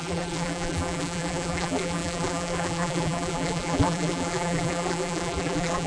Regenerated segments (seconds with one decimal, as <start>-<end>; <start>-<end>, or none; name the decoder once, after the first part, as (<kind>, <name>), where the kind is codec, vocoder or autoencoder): 0.0-5.9 (vocoder, BigVGAN v2)